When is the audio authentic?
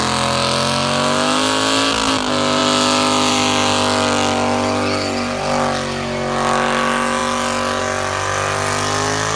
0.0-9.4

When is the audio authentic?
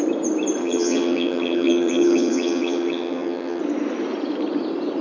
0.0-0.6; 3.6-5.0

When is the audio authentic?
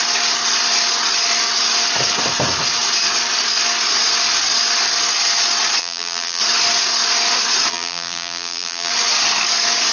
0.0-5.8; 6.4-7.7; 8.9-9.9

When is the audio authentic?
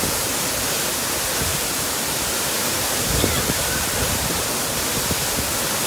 0.0-1.5; 5.0-5.9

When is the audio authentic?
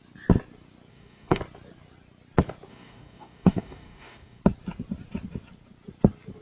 0.0-0.9; 1.4-2.7; 4.4-6.4